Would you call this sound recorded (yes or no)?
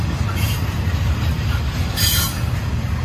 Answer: yes